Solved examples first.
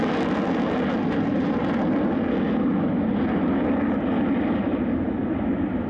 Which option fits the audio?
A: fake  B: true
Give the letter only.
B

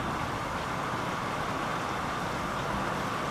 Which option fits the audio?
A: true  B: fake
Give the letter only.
A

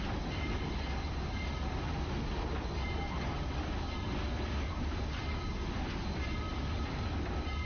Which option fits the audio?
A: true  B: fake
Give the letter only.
A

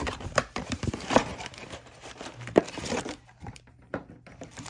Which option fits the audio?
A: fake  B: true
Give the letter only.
A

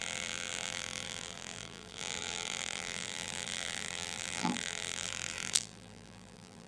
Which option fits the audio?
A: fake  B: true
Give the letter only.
A